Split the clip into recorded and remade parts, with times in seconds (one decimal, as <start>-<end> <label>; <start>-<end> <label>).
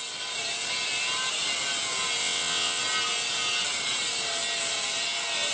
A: 0.0-2.2 recorded; 2.2-2.8 remade; 2.8-5.5 recorded